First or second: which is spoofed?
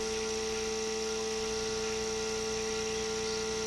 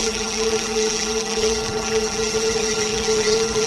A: second